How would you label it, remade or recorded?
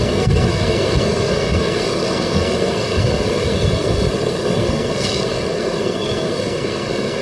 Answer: remade